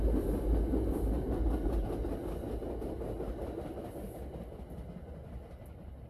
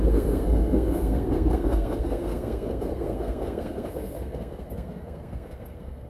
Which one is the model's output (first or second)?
second